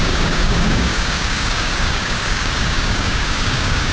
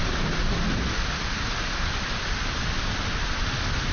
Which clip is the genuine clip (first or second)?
second